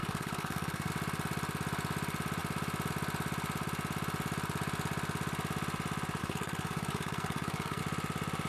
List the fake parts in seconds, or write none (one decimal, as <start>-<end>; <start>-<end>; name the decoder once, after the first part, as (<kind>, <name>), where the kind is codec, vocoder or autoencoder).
0.0-0.9 (codec, SNAC); 6.2-7.8